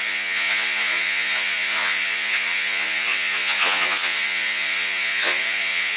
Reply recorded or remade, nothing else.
remade